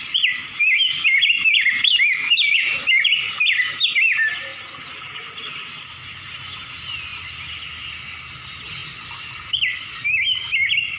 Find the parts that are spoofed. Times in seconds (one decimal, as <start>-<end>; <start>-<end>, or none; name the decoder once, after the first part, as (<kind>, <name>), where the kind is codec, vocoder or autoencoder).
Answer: 7.1-8.0 (vocoder, BigVGAN v2)